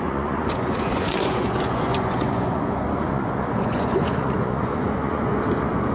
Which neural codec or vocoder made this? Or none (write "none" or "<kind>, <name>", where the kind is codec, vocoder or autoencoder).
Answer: vocoder, Vocos